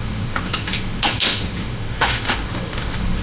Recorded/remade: remade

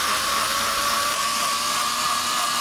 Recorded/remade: recorded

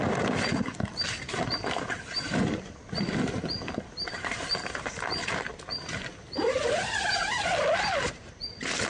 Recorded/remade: recorded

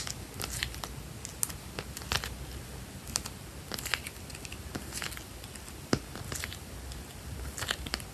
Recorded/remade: recorded